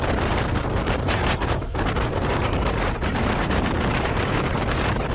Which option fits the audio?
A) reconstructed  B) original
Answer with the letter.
A